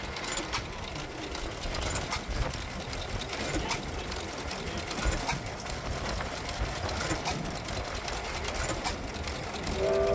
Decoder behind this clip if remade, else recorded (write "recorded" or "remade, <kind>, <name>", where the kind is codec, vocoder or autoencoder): recorded